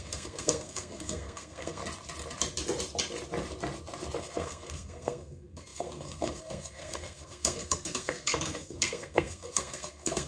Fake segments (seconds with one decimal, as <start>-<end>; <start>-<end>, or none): 0.0-1.8; 4.2-10.3